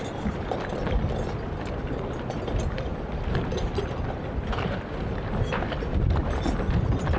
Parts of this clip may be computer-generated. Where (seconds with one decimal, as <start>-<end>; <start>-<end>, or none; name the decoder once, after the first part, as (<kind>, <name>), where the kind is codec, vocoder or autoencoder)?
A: none